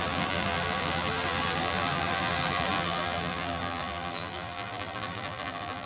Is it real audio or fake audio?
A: fake